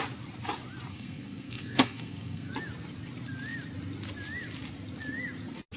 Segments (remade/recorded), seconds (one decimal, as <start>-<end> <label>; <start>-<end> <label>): 0.0-0.9 recorded; 0.9-2.5 remade; 2.5-5.8 recorded